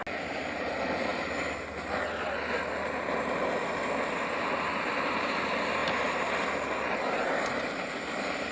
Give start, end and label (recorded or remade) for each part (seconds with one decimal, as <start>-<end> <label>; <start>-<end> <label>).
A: 0.0-8.5 recorded